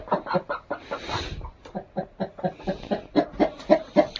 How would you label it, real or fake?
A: real